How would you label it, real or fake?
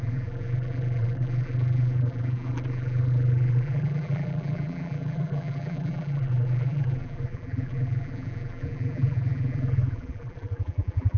fake